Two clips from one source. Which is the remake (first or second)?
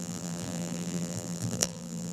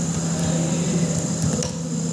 first